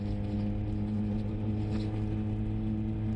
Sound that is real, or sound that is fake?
real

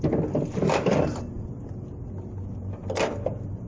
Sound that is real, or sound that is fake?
real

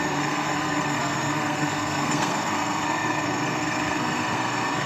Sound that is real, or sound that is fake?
fake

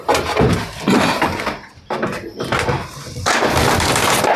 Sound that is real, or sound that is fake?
real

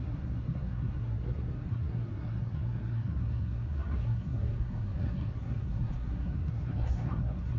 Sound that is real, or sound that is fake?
fake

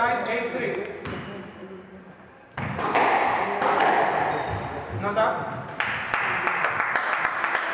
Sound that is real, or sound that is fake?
real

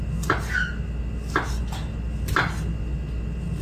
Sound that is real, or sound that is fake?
real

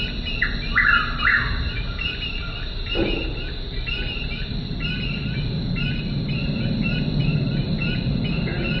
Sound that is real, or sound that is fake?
real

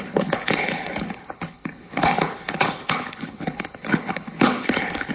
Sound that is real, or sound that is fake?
fake